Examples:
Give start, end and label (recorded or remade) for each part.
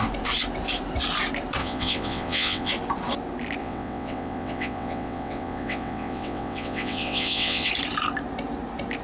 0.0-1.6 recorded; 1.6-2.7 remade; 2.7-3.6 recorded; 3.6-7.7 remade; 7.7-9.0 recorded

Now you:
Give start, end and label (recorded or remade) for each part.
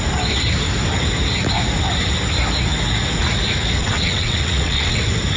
0.0-3.8 recorded; 3.8-5.0 remade; 5.0-5.4 recorded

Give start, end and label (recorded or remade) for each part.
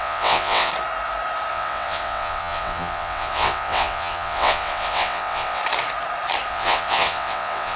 0.0-0.7 remade; 0.7-1.5 recorded; 1.5-5.6 remade; 5.6-6.5 recorded; 6.5-7.8 remade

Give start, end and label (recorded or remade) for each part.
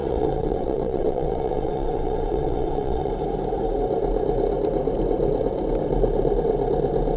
0.0-3.1 remade; 3.1-7.2 recorded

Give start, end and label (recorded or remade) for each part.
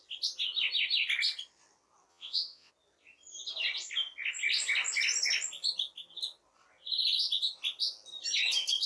0.0-2.1 recorded; 2.1-2.7 remade; 2.7-8.9 recorded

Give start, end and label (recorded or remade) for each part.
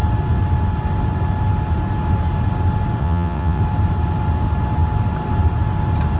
0.0-3.0 recorded; 3.0-3.6 remade; 3.6-6.2 recorded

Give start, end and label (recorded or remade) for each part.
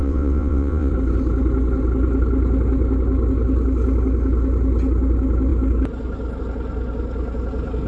0.0-0.9 remade; 0.9-7.9 recorded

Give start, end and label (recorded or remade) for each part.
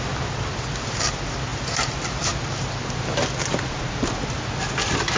0.0-5.2 recorded